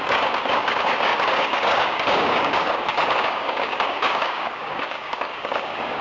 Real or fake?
fake